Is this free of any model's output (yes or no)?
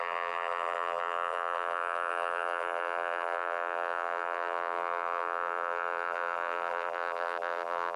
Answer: no